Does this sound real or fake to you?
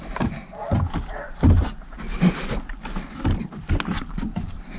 real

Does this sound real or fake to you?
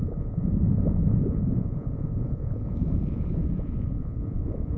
fake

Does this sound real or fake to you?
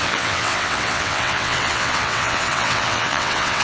fake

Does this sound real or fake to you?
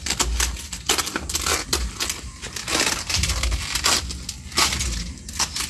real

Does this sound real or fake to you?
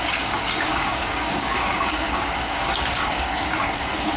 fake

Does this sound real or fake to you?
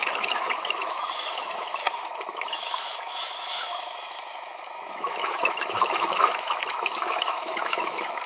fake